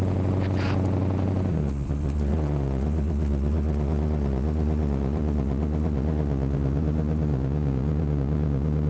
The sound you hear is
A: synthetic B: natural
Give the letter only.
A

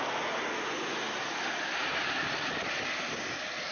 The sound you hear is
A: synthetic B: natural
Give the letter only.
B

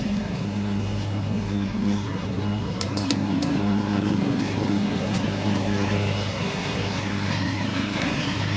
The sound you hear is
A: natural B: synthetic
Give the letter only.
B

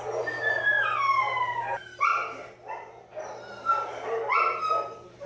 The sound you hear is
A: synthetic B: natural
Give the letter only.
B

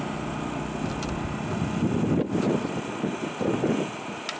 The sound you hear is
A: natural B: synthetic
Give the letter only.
A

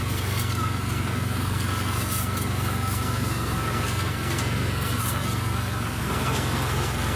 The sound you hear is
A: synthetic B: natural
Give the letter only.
A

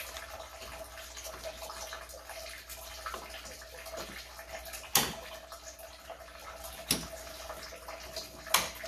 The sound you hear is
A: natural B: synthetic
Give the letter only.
A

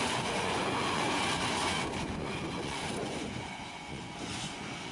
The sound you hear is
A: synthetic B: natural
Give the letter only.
A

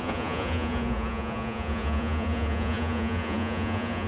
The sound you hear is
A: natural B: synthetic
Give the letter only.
B